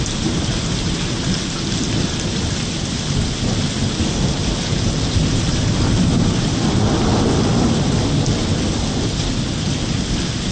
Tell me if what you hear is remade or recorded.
recorded